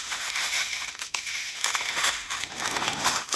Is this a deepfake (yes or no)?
yes